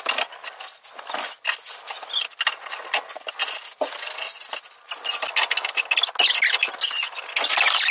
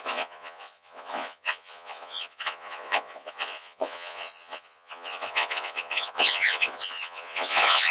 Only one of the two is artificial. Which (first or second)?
second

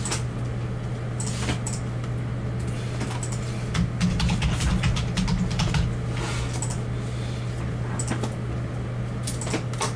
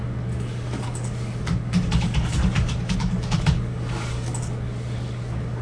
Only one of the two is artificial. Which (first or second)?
second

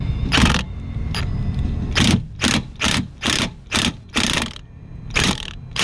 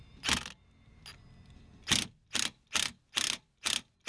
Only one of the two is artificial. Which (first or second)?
first